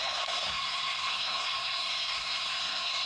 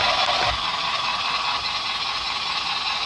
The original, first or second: second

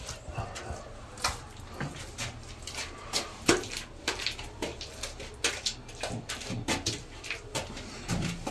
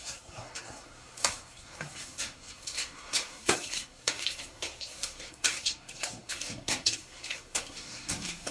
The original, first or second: first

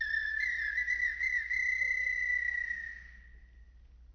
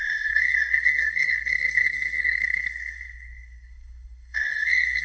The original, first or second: first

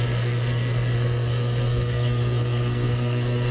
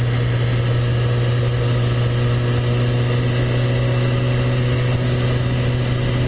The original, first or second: second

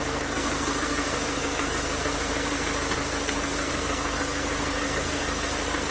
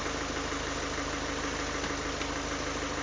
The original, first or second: second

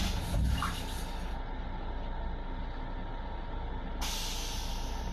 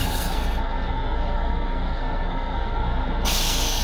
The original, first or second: first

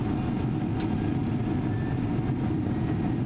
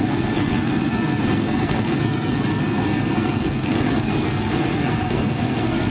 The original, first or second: first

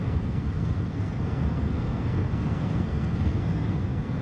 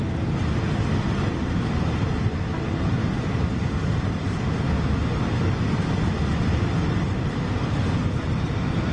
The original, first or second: second